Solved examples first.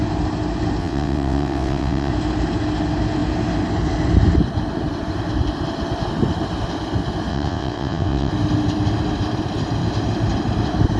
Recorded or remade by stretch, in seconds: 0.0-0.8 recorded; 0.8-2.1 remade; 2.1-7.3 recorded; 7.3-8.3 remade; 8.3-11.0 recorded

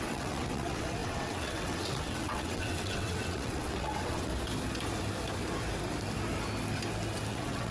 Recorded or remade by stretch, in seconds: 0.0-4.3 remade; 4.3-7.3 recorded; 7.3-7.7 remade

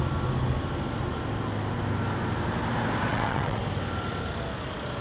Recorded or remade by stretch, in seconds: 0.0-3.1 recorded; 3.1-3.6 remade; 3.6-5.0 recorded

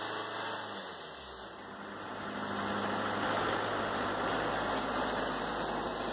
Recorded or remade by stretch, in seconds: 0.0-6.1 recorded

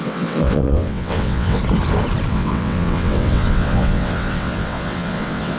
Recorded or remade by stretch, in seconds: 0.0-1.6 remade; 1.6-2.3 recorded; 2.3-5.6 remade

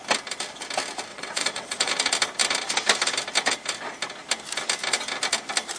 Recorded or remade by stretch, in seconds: 0.0-1.1 recorded; 1.1-1.9 remade; 1.9-5.8 recorded

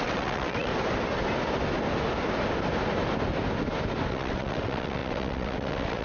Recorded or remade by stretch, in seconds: 0.0-0.7 remade; 0.7-4.1 recorded; 4.1-6.0 remade